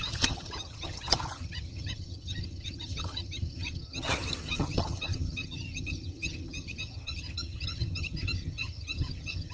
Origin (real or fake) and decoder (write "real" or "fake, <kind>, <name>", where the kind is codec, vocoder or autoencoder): fake, vocoder, HiFi-GAN